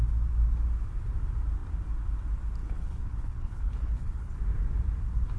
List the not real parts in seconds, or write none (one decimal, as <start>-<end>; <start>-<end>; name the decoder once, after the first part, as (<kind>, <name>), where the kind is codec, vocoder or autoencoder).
2.6-4.3 (codec, HILCodec)